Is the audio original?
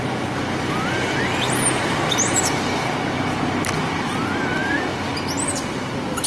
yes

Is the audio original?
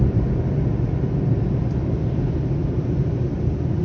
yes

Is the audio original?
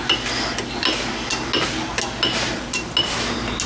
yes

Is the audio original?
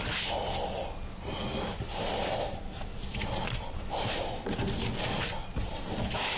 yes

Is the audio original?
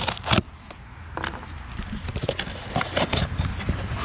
yes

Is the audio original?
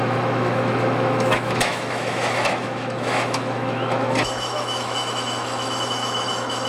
no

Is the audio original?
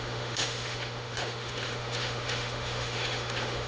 no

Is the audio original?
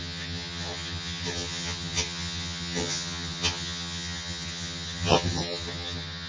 no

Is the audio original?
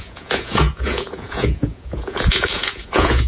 no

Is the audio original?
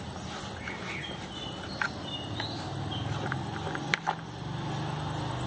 yes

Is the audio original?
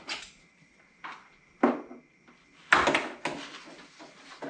yes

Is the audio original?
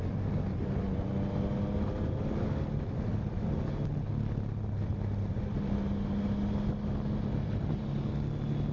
yes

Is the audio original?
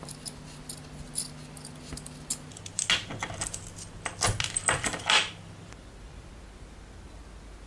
yes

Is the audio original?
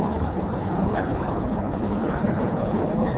no